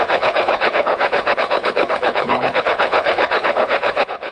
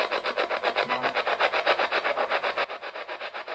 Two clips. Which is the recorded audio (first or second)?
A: second